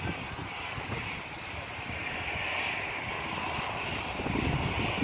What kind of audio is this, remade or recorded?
recorded